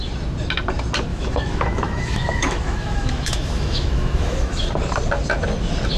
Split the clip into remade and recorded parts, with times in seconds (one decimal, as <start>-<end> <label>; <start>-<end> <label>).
0.0-1.1 recorded; 1.1-4.7 remade; 4.7-6.0 recorded